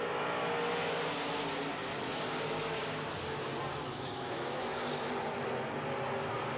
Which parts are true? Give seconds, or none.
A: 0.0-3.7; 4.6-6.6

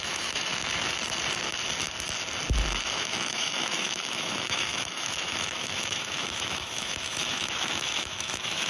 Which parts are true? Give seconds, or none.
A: 0.5-2.8